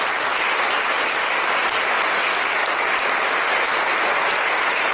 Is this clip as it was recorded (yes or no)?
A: yes